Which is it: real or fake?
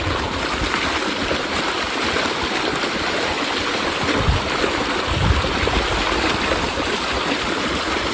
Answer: real